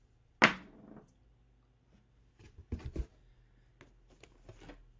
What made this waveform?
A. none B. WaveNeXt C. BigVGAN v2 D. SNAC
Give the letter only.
A